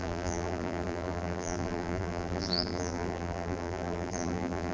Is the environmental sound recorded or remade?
remade